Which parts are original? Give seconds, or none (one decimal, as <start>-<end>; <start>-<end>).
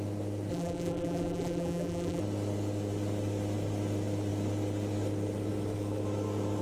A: 0.0-0.5; 2.2-6.6